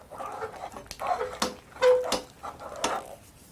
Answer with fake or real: real